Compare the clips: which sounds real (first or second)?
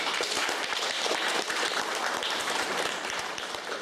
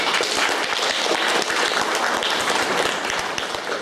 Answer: second